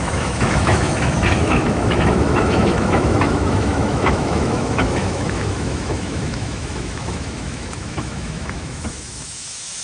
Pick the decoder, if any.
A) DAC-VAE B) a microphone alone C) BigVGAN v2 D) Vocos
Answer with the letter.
A